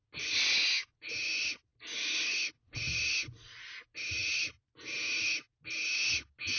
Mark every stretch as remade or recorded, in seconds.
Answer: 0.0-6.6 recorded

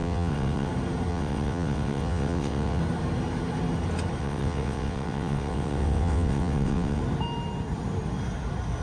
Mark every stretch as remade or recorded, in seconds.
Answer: 0.0-0.7 remade; 0.7-1.1 recorded; 1.1-2.8 remade; 2.8-4.2 recorded; 4.2-7.0 remade; 7.0-8.8 recorded

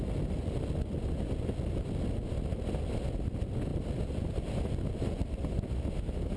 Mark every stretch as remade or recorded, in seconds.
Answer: 0.0-6.4 recorded

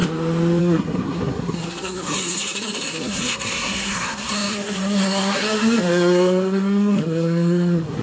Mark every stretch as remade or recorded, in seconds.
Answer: 0.0-0.6 recorded; 0.6-8.0 remade

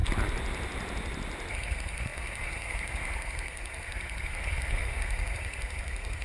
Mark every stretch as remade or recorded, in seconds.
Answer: 0.0-1.5 recorded; 1.5-6.2 remade